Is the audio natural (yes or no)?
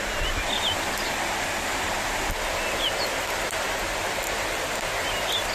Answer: yes